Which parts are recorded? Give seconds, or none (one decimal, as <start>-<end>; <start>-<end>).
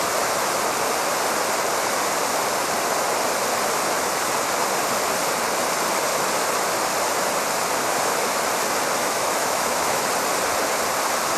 0.0-9.0; 10.0-11.4